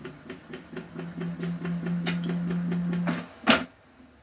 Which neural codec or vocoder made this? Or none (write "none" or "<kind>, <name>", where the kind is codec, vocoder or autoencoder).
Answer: none